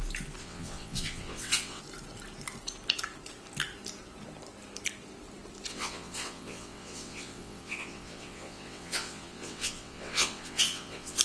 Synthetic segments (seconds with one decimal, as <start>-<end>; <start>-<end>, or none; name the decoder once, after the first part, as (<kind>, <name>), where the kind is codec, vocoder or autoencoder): 0.4-1.8 (vocoder, WaveNeXt); 5.7-11.2